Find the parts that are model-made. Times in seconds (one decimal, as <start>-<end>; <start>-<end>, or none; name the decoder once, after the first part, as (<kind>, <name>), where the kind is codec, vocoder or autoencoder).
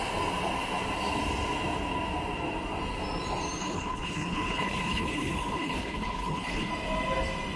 3.6-6.7 (codec, HILCodec)